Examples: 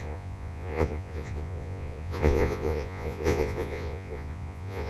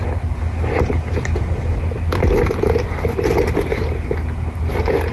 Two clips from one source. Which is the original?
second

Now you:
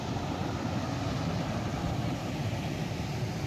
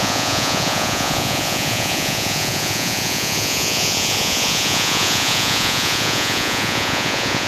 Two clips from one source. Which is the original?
first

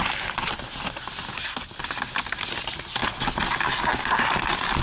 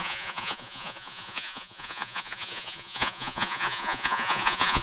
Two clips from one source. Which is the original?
first